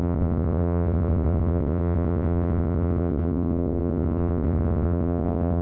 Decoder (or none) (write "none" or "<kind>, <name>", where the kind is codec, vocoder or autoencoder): vocoder, WaveNeXt